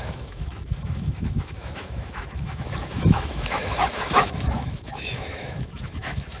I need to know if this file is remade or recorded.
remade